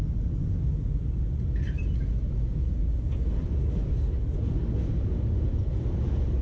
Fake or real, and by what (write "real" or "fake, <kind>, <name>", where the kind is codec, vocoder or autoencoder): real